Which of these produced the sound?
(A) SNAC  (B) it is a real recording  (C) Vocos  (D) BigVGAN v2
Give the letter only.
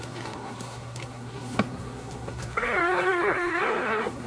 A